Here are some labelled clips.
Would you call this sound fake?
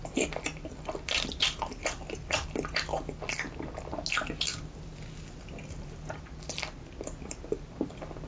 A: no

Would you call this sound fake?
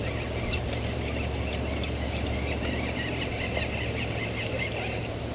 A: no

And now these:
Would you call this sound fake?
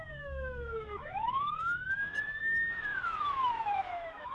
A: yes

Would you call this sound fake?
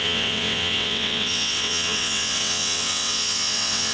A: yes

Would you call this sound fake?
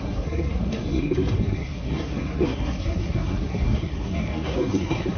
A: yes